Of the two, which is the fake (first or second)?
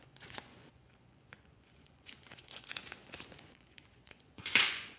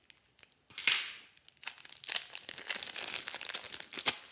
first